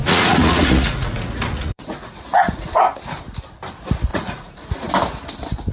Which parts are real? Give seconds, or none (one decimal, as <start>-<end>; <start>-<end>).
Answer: 2.7-4.1; 4.9-5.7